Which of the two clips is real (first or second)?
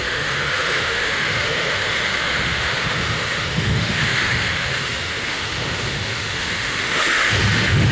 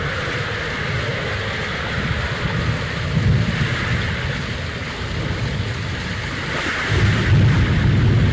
second